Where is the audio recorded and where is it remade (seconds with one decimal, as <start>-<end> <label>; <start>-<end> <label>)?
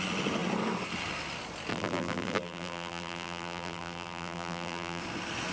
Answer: 0.0-1.7 recorded; 1.7-5.0 remade; 5.0-5.5 recorded